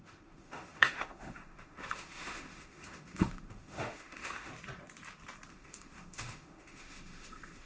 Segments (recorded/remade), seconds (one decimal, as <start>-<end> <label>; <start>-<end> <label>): 0.0-4.5 remade; 4.5-5.5 recorded; 5.5-7.7 remade